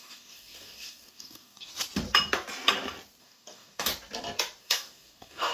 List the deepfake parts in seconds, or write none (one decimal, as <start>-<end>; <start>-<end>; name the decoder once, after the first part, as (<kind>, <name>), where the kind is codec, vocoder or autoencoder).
0.0-1.7 (codec, DAC); 3.2-3.9; 4.6-5.5